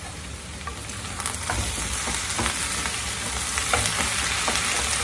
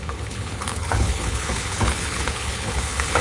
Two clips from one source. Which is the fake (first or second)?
second